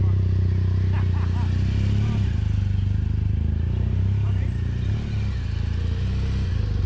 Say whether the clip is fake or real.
real